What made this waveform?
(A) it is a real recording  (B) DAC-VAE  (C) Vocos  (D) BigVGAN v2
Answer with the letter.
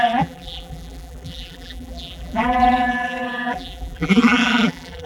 D